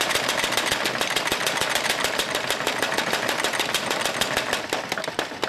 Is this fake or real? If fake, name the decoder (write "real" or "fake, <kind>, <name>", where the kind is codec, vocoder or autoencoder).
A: real